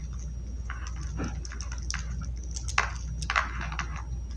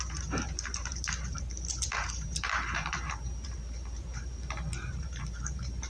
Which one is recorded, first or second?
first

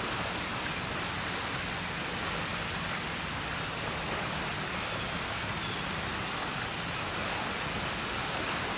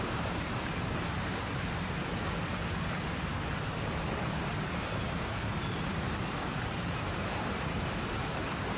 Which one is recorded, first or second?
first